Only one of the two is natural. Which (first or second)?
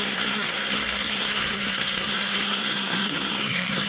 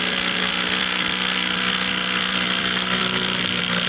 second